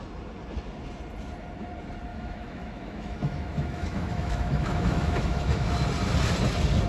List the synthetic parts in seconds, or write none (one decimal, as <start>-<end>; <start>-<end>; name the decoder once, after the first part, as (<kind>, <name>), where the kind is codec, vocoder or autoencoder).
2.1-5.7 (autoencoder, DAC-VAE)